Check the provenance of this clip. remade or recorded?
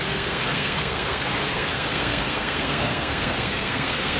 remade